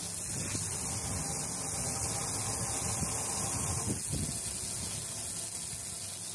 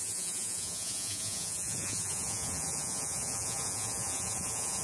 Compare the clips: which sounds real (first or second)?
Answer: first